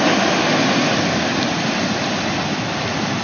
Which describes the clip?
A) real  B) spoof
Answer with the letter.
A